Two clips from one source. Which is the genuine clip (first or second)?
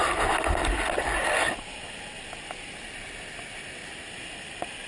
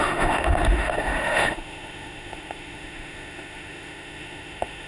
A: first